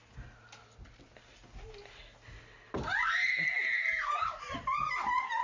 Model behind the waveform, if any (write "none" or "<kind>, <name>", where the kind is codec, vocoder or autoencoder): none